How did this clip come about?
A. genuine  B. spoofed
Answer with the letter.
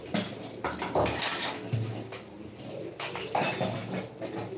A